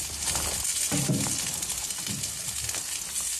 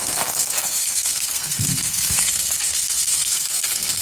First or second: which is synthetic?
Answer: second